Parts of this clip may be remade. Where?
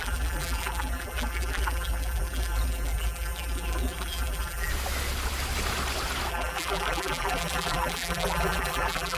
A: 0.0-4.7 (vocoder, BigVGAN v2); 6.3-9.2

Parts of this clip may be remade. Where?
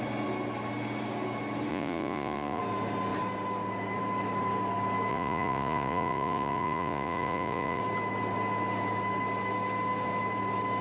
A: 1.7-2.6 (vocoder, Vocos); 5.1-7.8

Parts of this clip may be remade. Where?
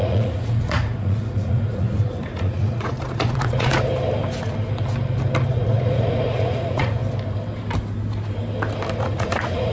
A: 0.0-3.7 (vocoder, Vocos); 5.5-7.0; 9.0-9.7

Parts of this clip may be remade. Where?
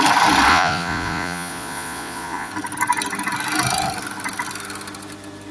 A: 0.5-2.5 (vocoder, Vocos)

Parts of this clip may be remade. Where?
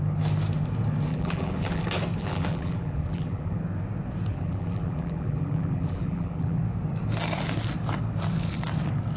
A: 1.1-1.8 (vocoder, BigVGAN v2); 2.2-3.6; 4.3-6.6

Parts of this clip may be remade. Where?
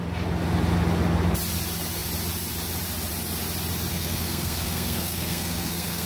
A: 3.9-6.1 (codec, SNAC)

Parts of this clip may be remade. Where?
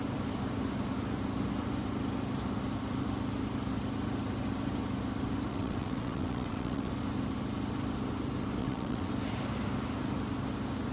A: 5.5-6.9 (vocoder, WaveNeXt); 8.6-9.1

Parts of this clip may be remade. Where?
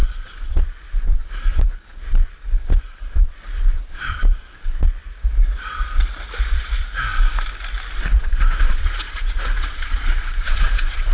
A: 0.0-5.0 (vocoder, Vocos); 8.2-11.1